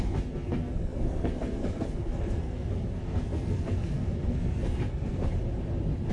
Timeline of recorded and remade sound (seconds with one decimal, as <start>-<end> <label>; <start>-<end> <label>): 0.0-5.2 remade; 5.2-6.1 recorded